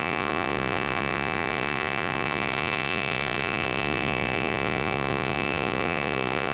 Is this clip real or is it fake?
fake